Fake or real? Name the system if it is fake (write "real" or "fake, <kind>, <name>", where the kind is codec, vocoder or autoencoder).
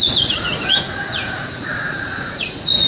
fake, vocoder, Vocos